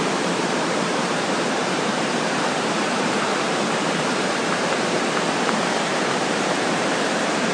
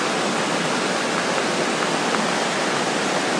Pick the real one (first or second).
second